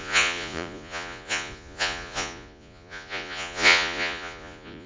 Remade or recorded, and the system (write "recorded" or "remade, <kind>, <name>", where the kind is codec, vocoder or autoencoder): remade, vocoder, Vocos